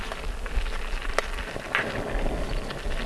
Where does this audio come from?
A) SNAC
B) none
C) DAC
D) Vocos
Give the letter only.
B